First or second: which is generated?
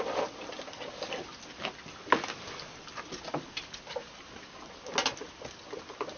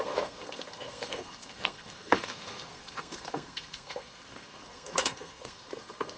second